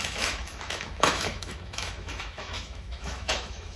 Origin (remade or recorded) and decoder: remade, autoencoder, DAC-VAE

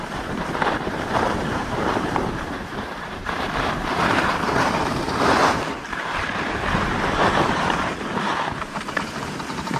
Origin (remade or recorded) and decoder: remade, vocoder, BigVGAN v2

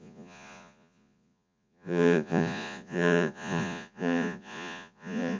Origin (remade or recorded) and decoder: remade, vocoder, Vocos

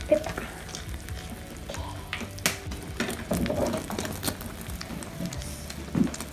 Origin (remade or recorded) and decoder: recorded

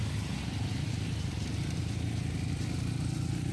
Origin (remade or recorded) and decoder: recorded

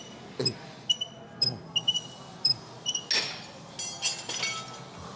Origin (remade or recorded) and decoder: recorded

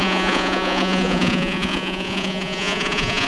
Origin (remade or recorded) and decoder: remade, vocoder, Vocos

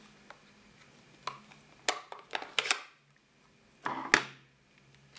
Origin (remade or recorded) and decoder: recorded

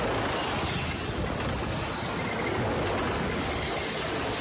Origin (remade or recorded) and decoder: recorded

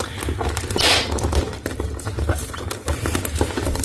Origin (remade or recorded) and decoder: recorded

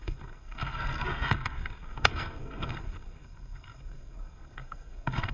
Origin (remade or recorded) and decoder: remade, codec, SNAC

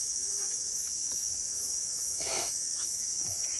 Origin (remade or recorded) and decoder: remade, autoencoder, DAC-VAE